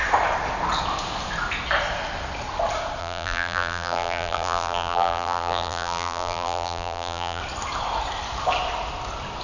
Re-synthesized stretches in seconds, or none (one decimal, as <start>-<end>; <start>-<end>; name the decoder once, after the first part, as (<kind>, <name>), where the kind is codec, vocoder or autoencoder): 3.0-7.4 (vocoder, BigVGAN v2)